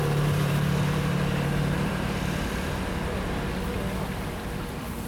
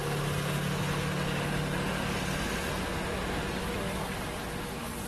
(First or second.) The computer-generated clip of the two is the first